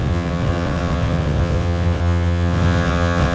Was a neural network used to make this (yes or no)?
yes